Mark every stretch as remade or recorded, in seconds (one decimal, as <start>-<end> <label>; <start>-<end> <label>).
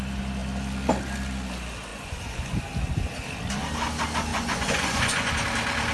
0.0-1.9 recorded; 1.9-2.6 remade; 2.6-4.3 recorded; 4.3-5.3 remade; 5.3-5.9 recorded